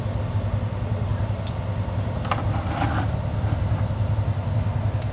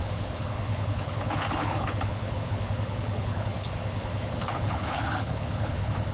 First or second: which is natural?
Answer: first